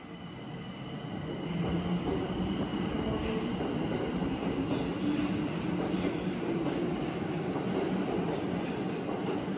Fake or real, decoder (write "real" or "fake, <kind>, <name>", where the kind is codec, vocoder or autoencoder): real